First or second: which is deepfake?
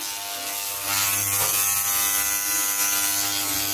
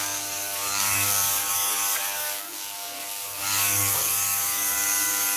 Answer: second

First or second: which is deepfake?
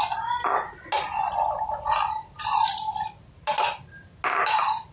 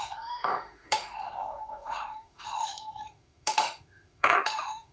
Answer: second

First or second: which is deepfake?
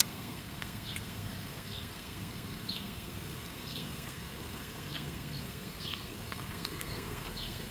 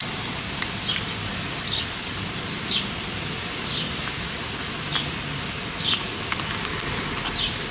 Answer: first